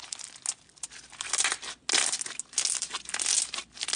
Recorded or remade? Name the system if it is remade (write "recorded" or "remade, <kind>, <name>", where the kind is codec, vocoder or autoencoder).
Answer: recorded